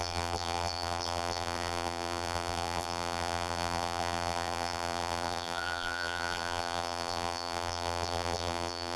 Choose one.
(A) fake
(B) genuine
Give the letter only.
A